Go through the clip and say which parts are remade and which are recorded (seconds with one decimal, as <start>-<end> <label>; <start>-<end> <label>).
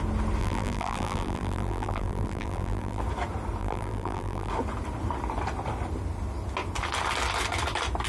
0.0-0.4 recorded; 0.4-3.0 remade; 3.0-3.6 recorded; 3.6-4.5 remade; 4.5-8.1 recorded